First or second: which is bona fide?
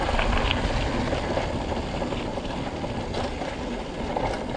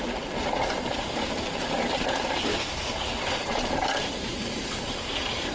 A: first